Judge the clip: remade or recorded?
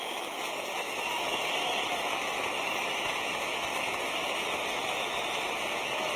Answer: remade